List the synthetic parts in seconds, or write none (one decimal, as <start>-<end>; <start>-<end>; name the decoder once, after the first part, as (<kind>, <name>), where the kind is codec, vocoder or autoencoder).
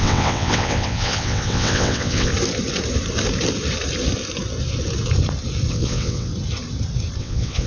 0.0-2.3 (vocoder, WaveNeXt); 5.7-6.3; 7.2-7.7